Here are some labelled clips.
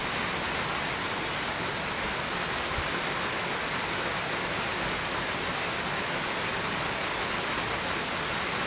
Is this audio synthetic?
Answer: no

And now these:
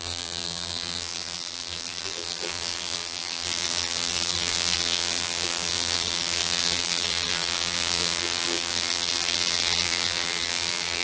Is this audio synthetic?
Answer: yes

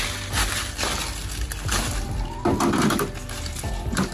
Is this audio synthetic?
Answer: no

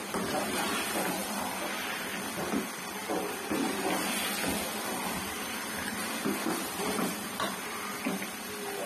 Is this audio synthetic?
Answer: yes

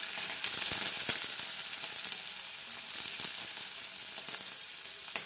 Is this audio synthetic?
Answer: no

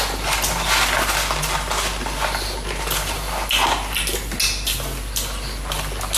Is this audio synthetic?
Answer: no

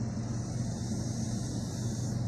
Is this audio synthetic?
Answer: no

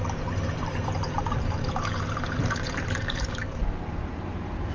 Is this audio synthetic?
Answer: yes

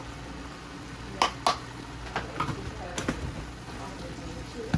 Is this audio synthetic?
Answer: no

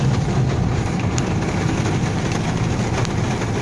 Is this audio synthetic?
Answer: no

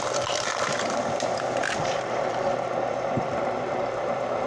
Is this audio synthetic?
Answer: yes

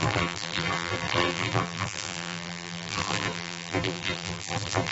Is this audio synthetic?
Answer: yes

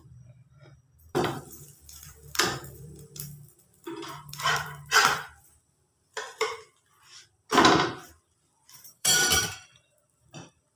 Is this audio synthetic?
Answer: yes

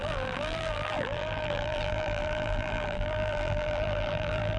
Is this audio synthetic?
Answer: yes